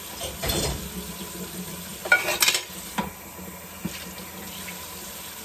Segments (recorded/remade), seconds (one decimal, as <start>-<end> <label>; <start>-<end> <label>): 0.0-5.4 recorded